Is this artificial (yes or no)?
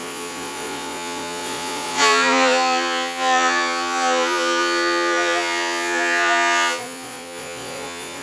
yes